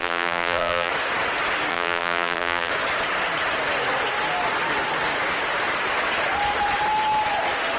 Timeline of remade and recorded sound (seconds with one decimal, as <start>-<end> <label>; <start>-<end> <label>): 0.0-0.9 remade; 0.9-1.7 recorded; 1.7-2.7 remade; 2.7-7.8 recorded